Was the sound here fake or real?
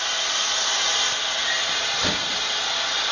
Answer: real